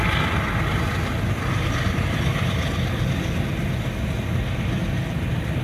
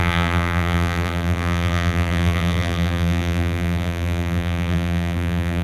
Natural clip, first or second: first